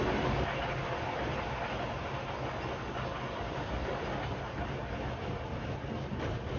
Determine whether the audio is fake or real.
real